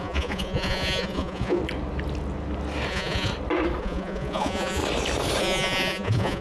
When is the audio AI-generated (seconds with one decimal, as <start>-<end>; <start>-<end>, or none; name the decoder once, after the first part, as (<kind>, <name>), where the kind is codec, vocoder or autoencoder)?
0.0-1.6 (vocoder, Vocos); 2.9-3.3; 3.8-4.8; 5.4-6.4